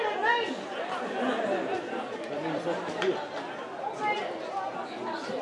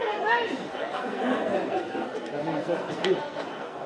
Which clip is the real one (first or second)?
first